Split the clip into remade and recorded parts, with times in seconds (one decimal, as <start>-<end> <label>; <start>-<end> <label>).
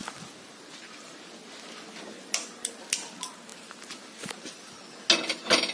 0.0-5.7 recorded